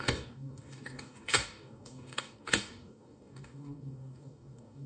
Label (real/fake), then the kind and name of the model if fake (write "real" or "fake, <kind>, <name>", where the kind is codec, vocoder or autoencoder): fake, codec, DAC